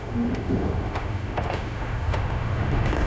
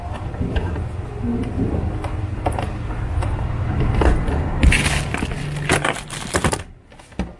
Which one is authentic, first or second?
second